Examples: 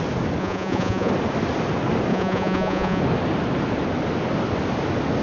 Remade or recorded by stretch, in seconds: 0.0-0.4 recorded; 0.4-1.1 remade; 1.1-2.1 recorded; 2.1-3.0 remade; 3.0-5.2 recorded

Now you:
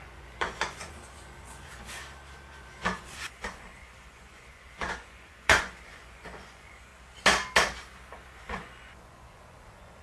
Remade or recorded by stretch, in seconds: 0.0-2.0 remade; 2.0-2.6 recorded; 2.6-6.9 remade; 6.9-8.4 recorded; 8.4-10.0 remade

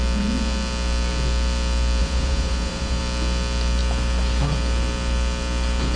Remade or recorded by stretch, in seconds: 0.0-2.0 recorded; 2.0-3.0 remade; 3.0-6.0 recorded

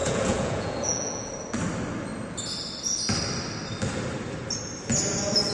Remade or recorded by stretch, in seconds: 0.0-1.3 remade; 1.3-5.5 recorded

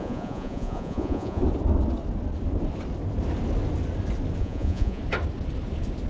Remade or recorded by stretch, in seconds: 0.0-1.4 remade; 1.4-4.4 recorded; 4.4-5.0 remade; 5.0-6.1 recorded